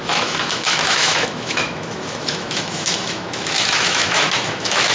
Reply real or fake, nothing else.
fake